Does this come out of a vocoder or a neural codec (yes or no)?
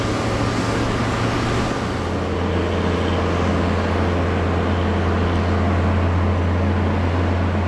no